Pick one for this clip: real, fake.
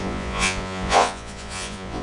fake